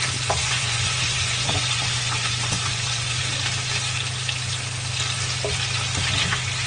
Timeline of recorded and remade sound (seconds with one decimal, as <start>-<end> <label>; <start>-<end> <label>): 0.0-0.4 recorded; 0.4-3.2 remade; 3.2-6.7 recorded